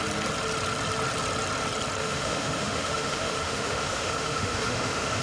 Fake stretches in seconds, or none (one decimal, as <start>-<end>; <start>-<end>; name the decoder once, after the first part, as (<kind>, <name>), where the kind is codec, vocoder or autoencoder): 2.0-5.2 (autoencoder, DAC-VAE)